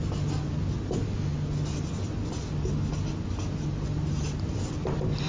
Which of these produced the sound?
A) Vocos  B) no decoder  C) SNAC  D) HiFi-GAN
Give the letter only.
B